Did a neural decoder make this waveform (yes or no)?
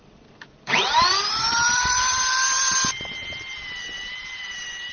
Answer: yes